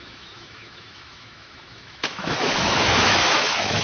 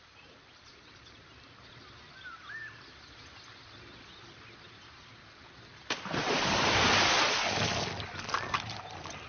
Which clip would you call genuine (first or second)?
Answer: second